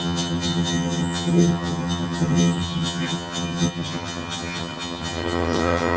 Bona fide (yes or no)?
no